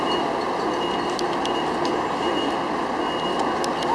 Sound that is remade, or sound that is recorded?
recorded